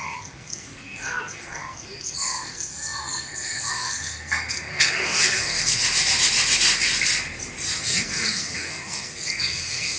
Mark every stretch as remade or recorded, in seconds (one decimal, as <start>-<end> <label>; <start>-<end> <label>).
0.0-5.8 remade; 5.8-7.8 recorded; 7.8-10.0 remade